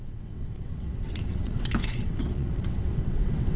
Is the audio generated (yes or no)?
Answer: yes